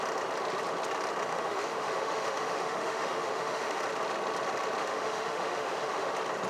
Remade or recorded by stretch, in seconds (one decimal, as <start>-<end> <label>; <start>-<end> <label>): 0.0-1.3 recorded; 1.3-3.8 remade; 3.8-4.8 recorded; 4.8-6.1 remade; 6.1-6.5 recorded